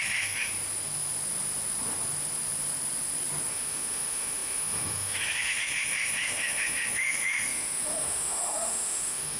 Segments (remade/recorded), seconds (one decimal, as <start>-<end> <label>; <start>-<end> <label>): 0.0-0.5 remade; 0.5-3.5 recorded; 3.5-9.4 remade